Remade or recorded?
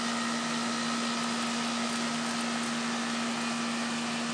recorded